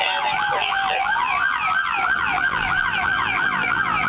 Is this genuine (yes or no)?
no